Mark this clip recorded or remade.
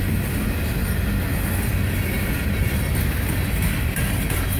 recorded